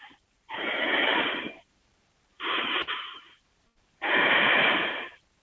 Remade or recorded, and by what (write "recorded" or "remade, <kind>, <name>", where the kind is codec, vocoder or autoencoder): remade, vocoder, BigVGAN v2